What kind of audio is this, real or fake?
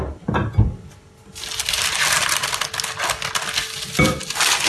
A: real